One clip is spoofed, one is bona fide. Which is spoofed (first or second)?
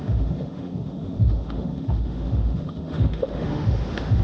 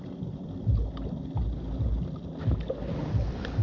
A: first